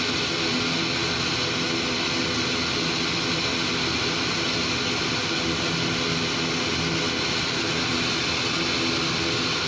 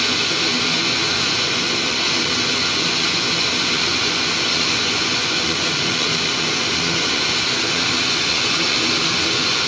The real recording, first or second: first